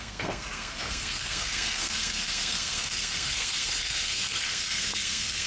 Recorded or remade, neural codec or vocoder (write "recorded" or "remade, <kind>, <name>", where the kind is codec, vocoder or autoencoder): remade, codec, SNAC